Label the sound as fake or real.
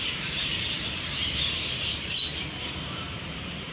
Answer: fake